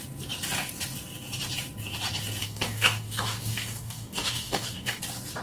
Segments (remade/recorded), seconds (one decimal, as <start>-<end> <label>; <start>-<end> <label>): 0.0-2.4 recorded; 2.4-5.0 remade; 5.0-5.4 recorded